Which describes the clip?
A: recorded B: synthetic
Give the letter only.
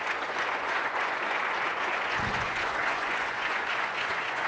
B